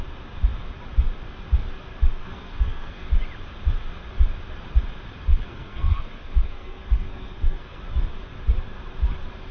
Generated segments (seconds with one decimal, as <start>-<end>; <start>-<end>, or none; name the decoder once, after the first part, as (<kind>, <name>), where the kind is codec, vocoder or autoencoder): 2.2-3.1 (codec, SNAC); 5.3-7.8